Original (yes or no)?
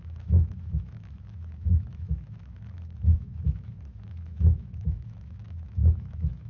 no